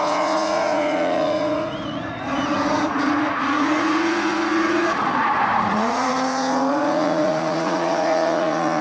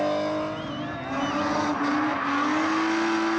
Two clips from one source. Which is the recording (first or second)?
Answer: second